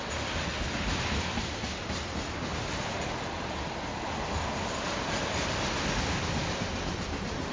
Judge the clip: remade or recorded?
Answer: recorded